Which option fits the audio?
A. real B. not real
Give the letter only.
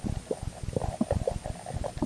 A